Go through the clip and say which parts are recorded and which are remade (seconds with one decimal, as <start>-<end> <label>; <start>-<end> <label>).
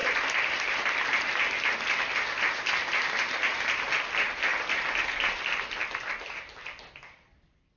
0.0-0.6 remade; 0.6-4.5 recorded; 4.5-5.2 remade; 5.2-7.8 recorded